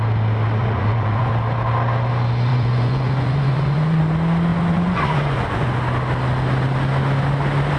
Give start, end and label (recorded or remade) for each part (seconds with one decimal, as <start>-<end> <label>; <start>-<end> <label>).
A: 0.0-0.6 recorded; 0.6-1.3 remade; 1.3-2.5 recorded; 2.5-4.0 remade; 4.0-4.5 recorded; 4.5-5.7 remade; 5.7-7.8 recorded